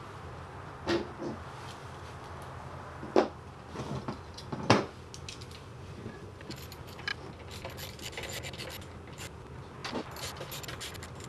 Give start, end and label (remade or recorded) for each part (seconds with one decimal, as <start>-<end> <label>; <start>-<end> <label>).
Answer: 0.0-5.7 recorded; 5.7-6.4 remade; 6.4-11.3 recorded